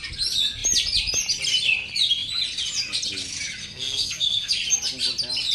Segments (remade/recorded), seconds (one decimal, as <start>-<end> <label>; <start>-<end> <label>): 0.0-3.6 recorded; 3.6-4.5 remade; 4.5-5.5 recorded